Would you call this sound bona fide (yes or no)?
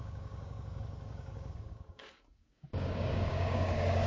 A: no